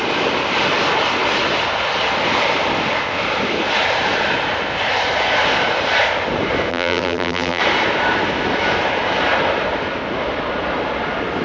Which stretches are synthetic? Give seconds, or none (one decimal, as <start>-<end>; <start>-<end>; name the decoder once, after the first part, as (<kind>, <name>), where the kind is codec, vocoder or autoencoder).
6.7-7.6 (vocoder, BigVGAN v2)